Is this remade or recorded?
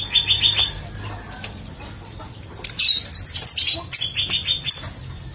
recorded